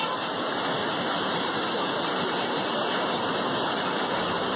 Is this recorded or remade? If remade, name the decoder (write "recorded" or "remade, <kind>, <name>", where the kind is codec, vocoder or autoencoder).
recorded